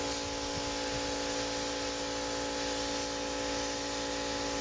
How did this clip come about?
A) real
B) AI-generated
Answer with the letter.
A